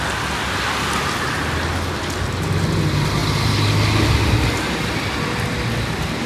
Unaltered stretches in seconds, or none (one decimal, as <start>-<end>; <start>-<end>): 0.0-6.3